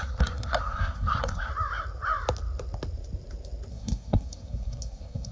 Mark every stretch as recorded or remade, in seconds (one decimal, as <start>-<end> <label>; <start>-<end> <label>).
0.0-1.5 remade; 1.5-3.7 recorded; 3.7-5.3 remade